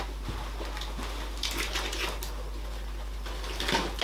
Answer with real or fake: real